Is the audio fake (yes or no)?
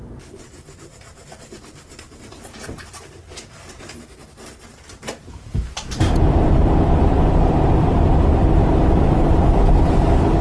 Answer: yes